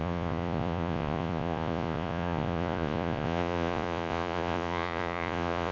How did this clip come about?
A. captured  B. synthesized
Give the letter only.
B